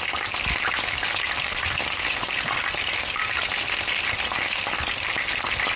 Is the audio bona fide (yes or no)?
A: yes